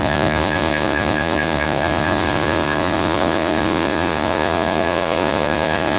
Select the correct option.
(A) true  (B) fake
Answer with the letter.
B